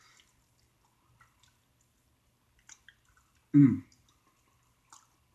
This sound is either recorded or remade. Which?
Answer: recorded